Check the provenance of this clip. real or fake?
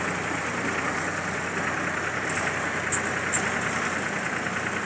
real